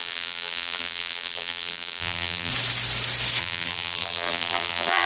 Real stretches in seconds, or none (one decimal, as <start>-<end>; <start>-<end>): 2.5-3.4